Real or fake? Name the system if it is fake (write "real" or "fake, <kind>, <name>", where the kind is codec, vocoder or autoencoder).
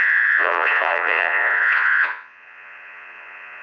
fake, vocoder, Vocos